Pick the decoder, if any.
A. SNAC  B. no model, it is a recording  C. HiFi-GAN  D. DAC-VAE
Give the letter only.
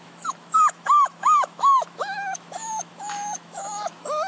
D